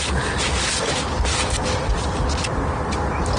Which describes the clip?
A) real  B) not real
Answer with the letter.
A